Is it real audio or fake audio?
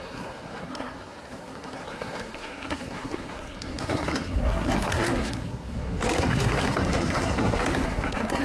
fake